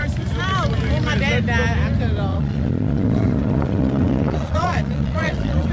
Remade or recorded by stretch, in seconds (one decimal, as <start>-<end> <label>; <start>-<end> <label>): 0.0-2.3 recorded; 2.3-5.7 remade